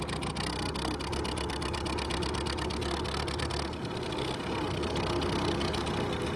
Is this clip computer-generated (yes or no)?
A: no